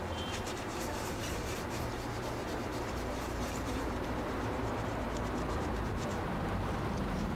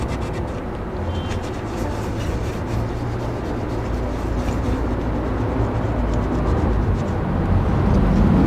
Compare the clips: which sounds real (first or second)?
second